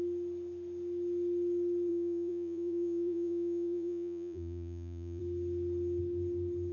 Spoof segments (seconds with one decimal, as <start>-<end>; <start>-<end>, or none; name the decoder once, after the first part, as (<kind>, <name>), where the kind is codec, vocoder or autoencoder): 1.9-5.2 (vocoder, Vocos)